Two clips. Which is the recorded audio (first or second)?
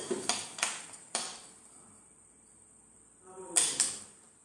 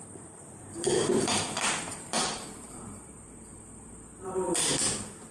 first